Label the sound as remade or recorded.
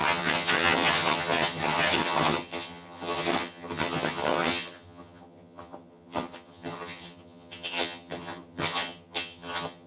remade